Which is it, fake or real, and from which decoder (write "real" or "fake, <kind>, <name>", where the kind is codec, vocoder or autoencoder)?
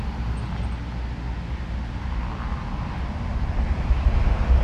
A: real